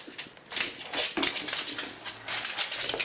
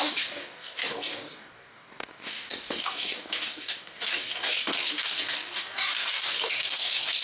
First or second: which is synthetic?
second